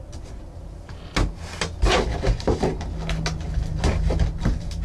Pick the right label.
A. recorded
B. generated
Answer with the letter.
A